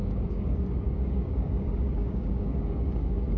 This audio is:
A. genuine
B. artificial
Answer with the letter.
B